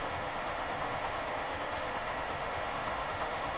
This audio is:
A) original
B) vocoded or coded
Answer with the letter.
B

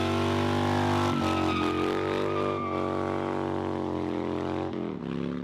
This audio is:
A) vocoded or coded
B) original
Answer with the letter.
B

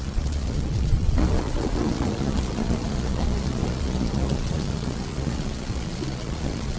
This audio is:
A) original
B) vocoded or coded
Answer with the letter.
B